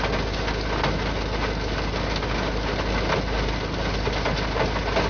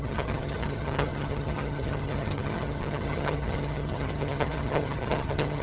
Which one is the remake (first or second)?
second